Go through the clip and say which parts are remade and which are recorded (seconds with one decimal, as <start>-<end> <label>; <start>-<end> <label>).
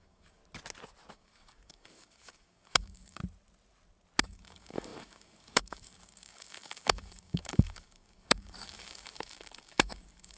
0.0-0.4 remade; 0.4-1.1 recorded; 1.1-3.2 remade; 3.2-4.2 recorded; 4.2-10.4 remade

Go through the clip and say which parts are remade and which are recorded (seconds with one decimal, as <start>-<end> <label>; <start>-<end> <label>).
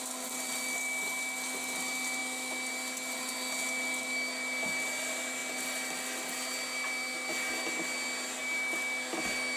0.0-9.6 recorded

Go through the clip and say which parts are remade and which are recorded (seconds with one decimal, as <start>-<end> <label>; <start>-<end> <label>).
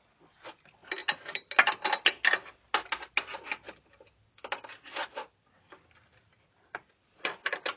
0.0-7.8 recorded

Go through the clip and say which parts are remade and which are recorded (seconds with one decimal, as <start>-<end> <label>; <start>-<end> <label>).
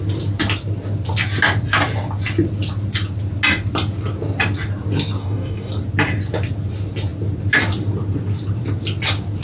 0.0-5.2 recorded; 5.2-5.7 remade; 5.7-9.4 recorded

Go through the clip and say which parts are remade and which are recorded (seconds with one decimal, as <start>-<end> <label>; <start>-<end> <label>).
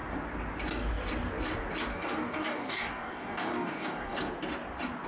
0.0-1.9 recorded; 1.9-4.2 remade; 4.2-5.1 recorded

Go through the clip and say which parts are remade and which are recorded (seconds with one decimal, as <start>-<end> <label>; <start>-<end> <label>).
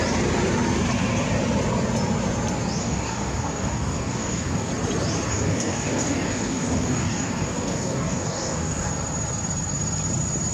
0.0-2.8 recorded; 2.8-4.7 remade; 4.7-5.3 recorded; 5.3-8.9 remade; 8.9-10.5 recorded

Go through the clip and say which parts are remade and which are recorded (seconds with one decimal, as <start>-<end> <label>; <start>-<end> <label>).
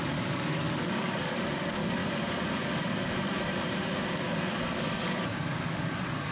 0.0-2.0 remade; 2.0-4.5 recorded; 4.5-6.3 remade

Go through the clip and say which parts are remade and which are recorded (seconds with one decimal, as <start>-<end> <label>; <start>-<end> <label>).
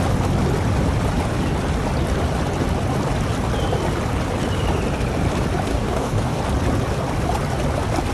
0.0-5.7 recorded; 5.7-6.4 remade; 6.4-8.1 recorded